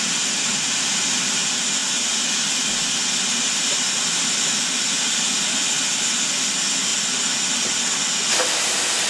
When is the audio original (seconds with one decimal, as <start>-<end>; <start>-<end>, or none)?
0.0-9.1